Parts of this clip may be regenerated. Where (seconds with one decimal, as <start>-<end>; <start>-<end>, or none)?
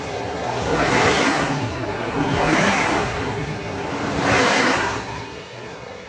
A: 0.0-3.9; 4.4-6.1